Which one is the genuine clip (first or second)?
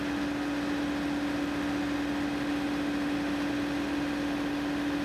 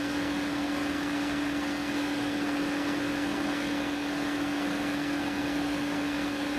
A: first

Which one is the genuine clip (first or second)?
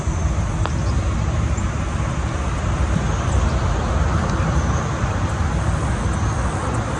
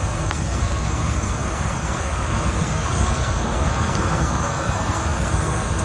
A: first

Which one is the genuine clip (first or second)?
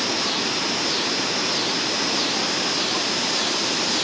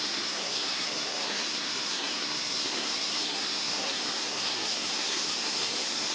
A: first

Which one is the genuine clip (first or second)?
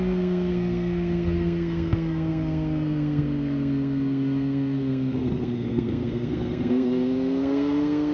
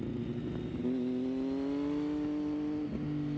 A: second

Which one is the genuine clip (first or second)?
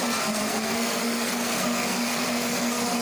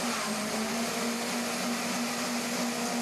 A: second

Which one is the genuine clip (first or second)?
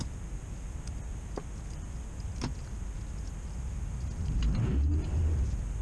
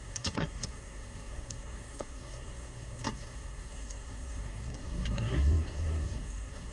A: first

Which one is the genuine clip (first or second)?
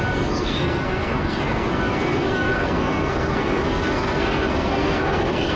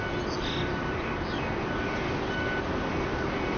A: second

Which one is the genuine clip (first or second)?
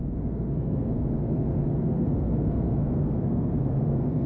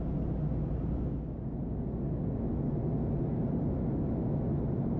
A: second